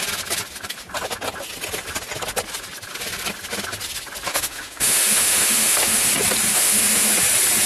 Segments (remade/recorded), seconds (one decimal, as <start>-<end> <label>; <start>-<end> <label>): 0.0-4.3 recorded; 4.3-6.1 remade; 6.1-6.5 recorded; 6.5-7.1 remade; 7.1-7.7 recorded